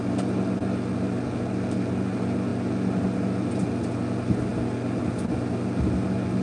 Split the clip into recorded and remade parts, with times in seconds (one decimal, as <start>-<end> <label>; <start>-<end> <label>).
0.0-6.4 recorded